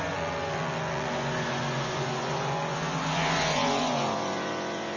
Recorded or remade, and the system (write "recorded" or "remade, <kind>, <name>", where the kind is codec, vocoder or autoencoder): remade, vocoder, Vocos